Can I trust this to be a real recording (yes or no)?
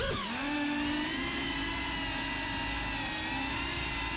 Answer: yes